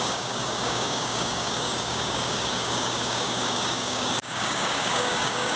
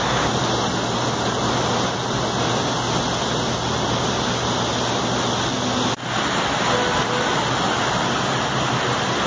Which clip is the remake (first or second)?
first